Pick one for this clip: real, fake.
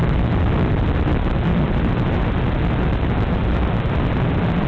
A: real